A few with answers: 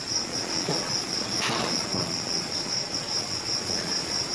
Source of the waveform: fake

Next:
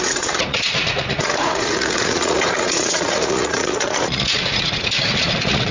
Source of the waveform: fake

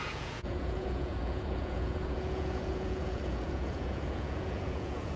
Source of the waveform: fake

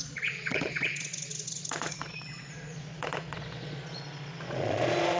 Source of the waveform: fake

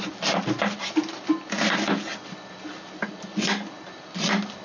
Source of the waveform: real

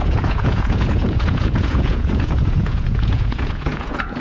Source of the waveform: fake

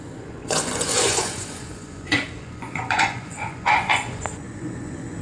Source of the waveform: fake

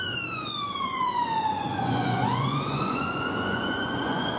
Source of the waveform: fake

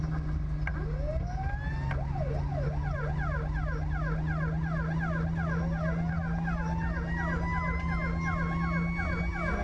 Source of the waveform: real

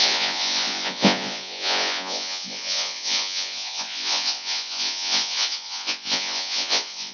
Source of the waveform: fake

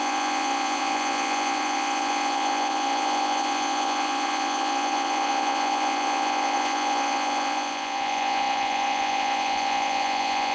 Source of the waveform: fake